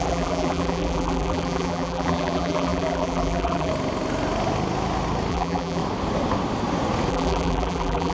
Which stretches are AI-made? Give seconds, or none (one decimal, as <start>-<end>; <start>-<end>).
0.0-3.7; 5.3-5.8; 7.1-8.1